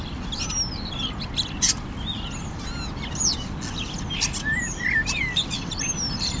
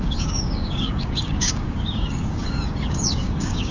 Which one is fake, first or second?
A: second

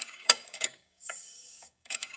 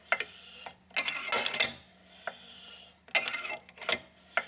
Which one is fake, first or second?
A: first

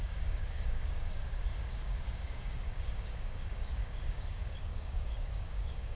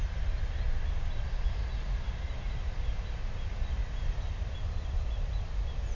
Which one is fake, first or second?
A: first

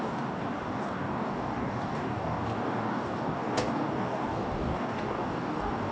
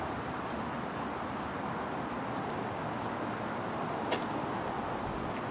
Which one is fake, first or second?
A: first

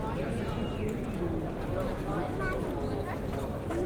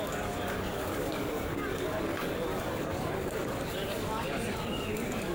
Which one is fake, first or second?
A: second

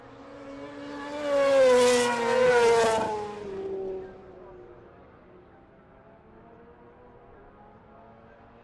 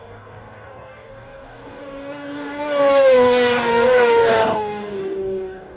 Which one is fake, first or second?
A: second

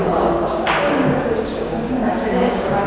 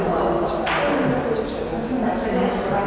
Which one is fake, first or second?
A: first